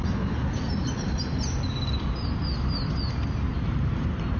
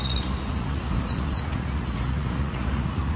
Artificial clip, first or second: second